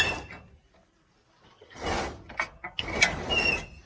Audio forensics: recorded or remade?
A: recorded